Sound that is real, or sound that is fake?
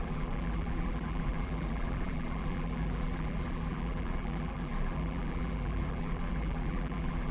fake